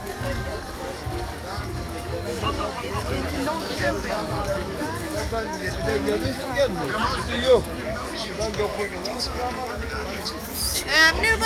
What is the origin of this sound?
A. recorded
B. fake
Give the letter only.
B